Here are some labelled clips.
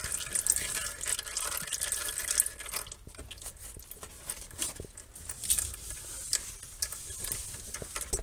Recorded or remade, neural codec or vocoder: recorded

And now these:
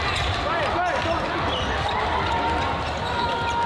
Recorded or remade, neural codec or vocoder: recorded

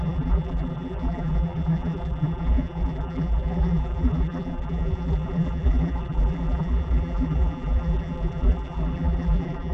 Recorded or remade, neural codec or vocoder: remade, vocoder, BigVGAN v2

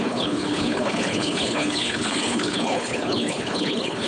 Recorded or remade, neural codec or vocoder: remade, codec, HILCodec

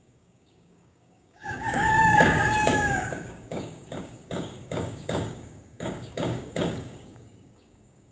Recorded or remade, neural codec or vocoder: remade, codec, DAC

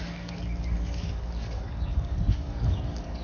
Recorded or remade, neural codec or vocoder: remade, codec, DAC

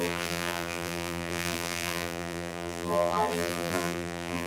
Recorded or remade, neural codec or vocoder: remade, vocoder, BigVGAN v2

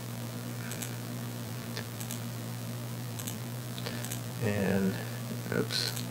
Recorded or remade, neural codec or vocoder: remade, vocoder, BigVGAN v2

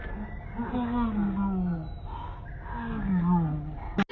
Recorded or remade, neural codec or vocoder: recorded